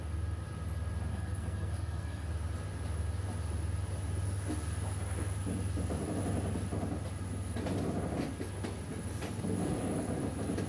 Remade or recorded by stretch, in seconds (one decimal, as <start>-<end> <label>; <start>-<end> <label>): 0.0-1.1 recorded; 1.1-2.3 remade; 2.3-10.7 recorded